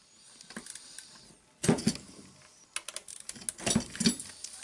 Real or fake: real